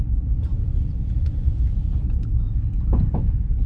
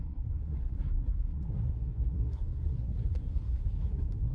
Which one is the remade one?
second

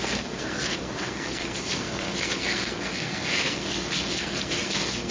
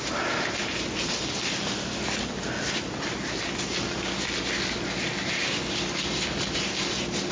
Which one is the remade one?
first